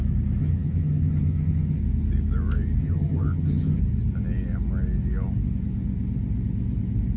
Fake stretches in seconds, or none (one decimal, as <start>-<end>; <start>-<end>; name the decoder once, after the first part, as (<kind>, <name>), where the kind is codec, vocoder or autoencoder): 0.4-1.8 (vocoder, HiFi-GAN); 2.8-3.8